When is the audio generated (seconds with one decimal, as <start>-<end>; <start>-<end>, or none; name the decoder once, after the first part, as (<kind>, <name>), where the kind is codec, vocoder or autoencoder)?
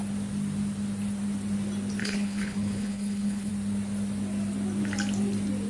2.0-3.5 (codec, HILCodec)